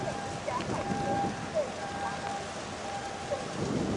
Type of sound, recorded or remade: recorded